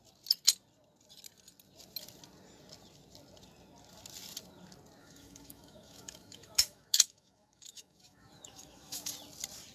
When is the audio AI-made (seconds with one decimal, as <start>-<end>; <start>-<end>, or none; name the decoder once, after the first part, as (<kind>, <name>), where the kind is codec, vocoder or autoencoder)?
5.0-9.1 (autoencoder, DAC-VAE)